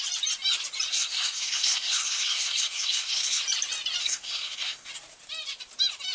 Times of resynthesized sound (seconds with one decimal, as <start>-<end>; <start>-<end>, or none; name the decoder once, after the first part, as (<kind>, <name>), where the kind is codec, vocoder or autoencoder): 0.9-3.4 (codec, SNAC); 4.0-4.9